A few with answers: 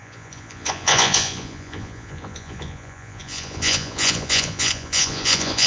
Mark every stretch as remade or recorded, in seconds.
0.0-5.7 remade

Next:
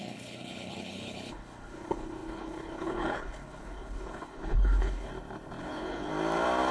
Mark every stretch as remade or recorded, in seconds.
0.0-5.1 remade; 5.1-5.6 recorded; 5.6-6.1 remade; 6.1-6.7 recorded

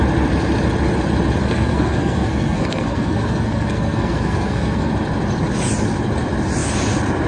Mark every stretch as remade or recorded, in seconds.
0.0-1.4 recorded; 1.4-4.9 remade; 4.9-7.3 recorded

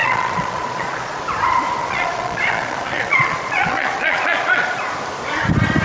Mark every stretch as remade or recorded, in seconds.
0.0-1.2 remade; 1.2-1.8 recorded; 1.8-4.9 remade; 4.9-5.8 recorded

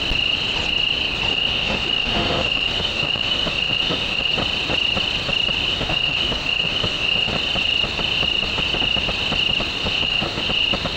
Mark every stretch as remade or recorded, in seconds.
0.0-1.3 recorded; 1.3-4.3 remade; 4.3-5.7 recorded; 5.7-7.3 remade; 7.3-9.8 recorded; 9.8-10.4 remade; 10.4-11.0 recorded

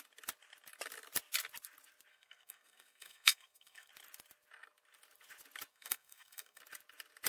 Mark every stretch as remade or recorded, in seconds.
0.0-2.1 recorded; 2.1-3.9 remade; 3.9-5.7 recorded; 5.7-6.6 remade; 6.6-7.3 recorded